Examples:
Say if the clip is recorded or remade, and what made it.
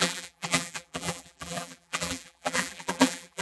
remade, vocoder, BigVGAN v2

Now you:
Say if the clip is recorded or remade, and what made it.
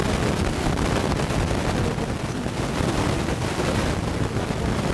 remade, vocoder, BigVGAN v2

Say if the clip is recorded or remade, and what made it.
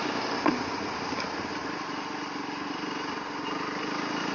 recorded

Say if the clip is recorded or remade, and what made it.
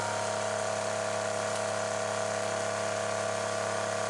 recorded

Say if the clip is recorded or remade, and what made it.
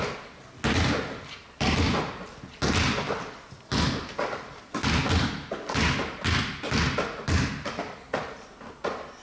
recorded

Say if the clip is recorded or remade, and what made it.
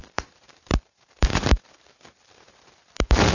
remade, vocoder, BigVGAN v2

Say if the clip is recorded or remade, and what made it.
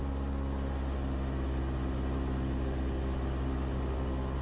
recorded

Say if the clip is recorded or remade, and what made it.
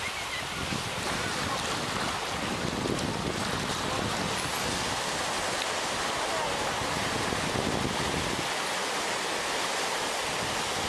recorded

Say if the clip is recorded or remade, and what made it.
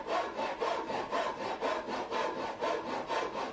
recorded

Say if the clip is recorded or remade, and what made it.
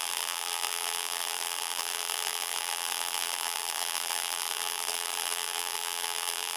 remade, vocoder, BigVGAN v2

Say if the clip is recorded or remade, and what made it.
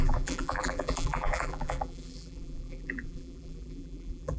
remade, vocoder, BigVGAN v2